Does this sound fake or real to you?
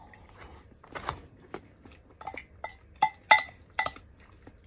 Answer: real